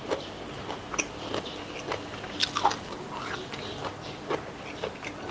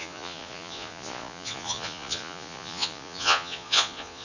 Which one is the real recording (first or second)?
first